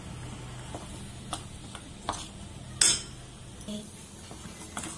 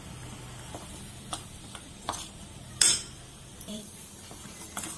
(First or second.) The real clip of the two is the first